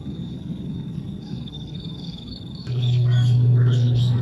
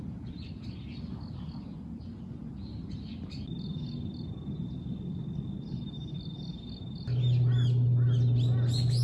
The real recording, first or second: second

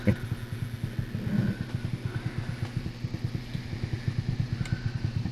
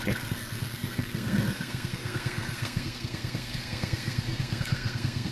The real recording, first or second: first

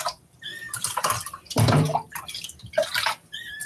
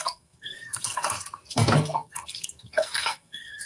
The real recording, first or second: first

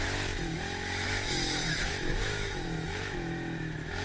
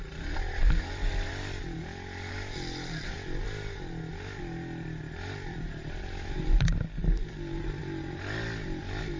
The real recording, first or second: second